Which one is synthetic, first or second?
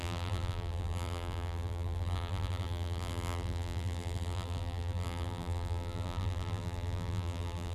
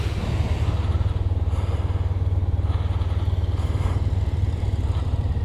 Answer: first